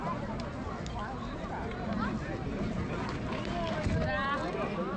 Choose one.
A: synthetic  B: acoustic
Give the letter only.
B